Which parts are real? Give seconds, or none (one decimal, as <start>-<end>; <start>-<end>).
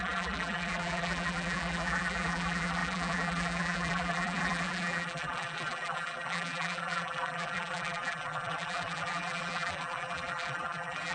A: none